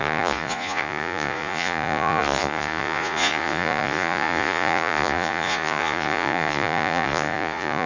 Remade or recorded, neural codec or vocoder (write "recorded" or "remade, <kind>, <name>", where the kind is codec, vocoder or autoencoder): remade, vocoder, Vocos